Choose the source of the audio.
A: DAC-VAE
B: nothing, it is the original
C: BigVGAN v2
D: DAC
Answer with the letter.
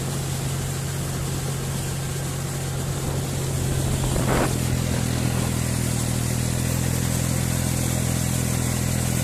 B